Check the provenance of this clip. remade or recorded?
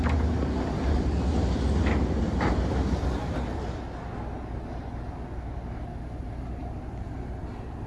recorded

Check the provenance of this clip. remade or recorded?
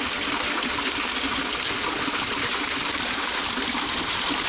recorded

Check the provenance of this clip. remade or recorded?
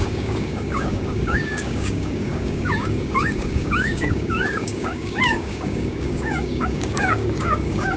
remade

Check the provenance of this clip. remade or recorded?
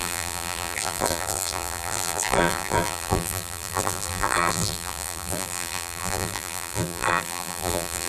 remade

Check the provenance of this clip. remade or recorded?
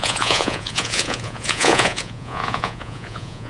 remade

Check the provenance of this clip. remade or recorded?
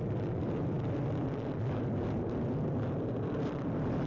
recorded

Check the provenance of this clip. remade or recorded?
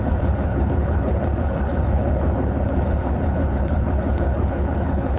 remade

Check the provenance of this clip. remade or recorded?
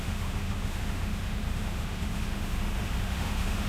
remade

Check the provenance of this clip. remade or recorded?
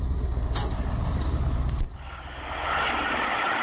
recorded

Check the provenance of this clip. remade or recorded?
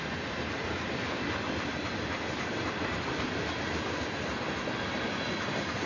recorded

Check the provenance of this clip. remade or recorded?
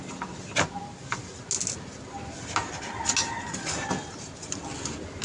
recorded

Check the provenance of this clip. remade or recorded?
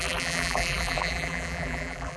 remade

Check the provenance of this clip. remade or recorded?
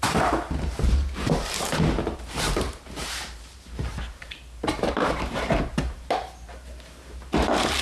remade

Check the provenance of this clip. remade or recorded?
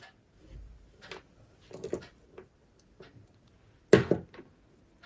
recorded